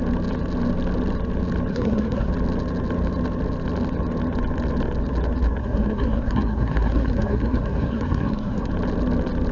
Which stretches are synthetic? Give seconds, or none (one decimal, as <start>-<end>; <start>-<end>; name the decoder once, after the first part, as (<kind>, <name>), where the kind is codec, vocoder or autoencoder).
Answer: 1.7-2.3 (codec, SNAC); 5.6-8.7